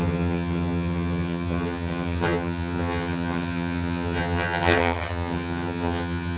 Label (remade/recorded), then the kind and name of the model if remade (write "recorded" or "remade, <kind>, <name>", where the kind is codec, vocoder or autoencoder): remade, vocoder, HiFi-GAN